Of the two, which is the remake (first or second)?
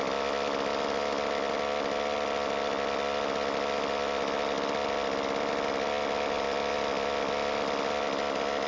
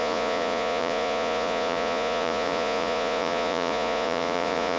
second